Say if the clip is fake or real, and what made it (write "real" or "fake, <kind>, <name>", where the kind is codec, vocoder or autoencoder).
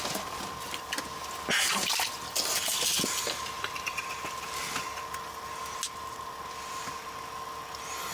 real